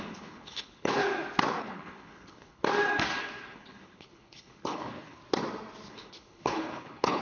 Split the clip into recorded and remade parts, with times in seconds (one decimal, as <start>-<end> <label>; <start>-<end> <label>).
0.0-1.0 remade; 1.0-1.6 recorded; 1.6-2.6 remade; 2.6-3.5 recorded; 3.5-5.2 remade; 5.2-5.9 recorded; 5.9-7.2 remade

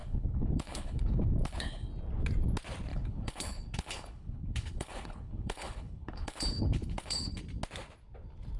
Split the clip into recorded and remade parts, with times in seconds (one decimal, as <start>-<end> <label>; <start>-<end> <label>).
0.0-1.9 remade; 1.9-2.9 recorded; 2.9-7.4 remade; 7.4-8.6 recorded

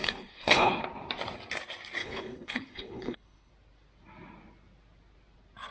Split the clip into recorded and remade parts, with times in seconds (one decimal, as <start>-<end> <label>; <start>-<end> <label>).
0.0-0.8 remade; 0.8-2.0 recorded; 2.0-3.5 remade; 3.5-5.7 recorded

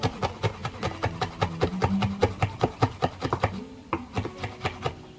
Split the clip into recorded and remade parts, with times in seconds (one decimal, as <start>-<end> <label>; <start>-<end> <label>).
0.0-5.2 recorded

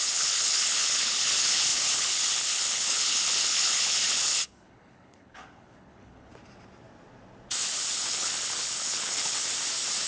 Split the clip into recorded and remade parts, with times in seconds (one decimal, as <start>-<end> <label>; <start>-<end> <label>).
0.0-6.3 remade; 6.3-8.0 recorded; 8.0-9.4 remade; 9.4-10.1 recorded

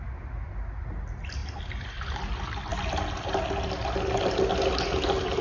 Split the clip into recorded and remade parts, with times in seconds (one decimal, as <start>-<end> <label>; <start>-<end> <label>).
0.0-5.4 recorded